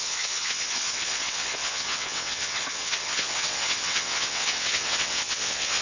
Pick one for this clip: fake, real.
fake